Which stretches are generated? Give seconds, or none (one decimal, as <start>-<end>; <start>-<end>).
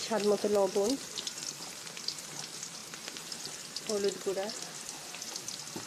none